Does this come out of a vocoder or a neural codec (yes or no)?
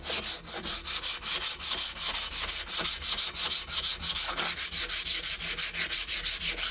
no